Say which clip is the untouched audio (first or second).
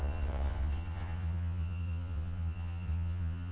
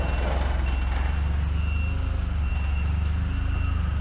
second